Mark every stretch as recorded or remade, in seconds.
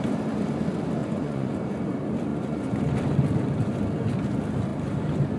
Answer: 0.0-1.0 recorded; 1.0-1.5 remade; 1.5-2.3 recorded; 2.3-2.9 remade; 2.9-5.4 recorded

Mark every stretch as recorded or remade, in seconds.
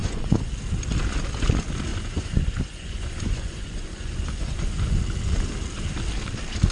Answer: 0.0-0.5 remade; 0.5-1.9 recorded; 1.9-5.0 remade; 5.0-6.7 recorded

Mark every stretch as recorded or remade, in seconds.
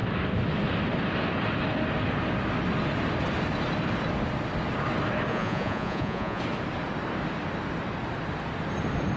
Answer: 0.0-5.3 recorded; 5.3-6.4 remade; 6.4-9.2 recorded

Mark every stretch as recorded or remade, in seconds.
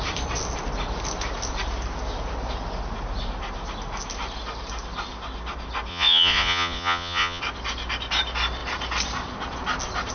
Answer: 0.0-5.9 recorded; 5.9-7.4 remade; 7.4-10.1 recorded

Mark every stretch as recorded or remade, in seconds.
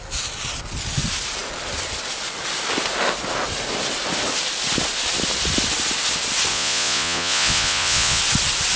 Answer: 0.0-6.5 recorded; 6.5-8.2 remade; 8.2-8.8 recorded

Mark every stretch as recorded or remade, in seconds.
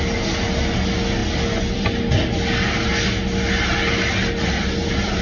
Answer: 0.0-5.2 recorded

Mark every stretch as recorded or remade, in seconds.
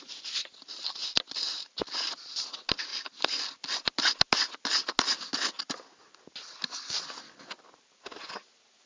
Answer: 0.0-8.9 recorded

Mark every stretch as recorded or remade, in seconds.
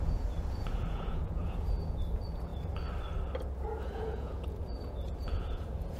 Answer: 0.0-2.5 remade; 2.5-3.8 recorded; 3.8-6.0 remade